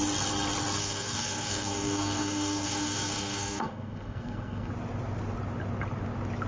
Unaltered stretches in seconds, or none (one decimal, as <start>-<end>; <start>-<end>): 0.0-0.8; 4.7-6.5